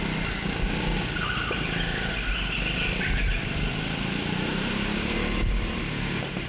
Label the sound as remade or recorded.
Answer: recorded